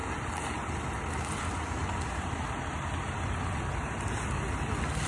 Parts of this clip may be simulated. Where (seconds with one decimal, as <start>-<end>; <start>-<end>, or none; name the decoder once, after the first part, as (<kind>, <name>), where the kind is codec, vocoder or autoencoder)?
1.8-2.9 (vocoder, BigVGAN v2)